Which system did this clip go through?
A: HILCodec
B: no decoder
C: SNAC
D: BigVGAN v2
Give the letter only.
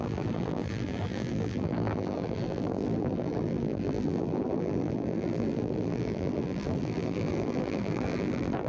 D